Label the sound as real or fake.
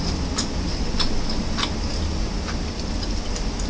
real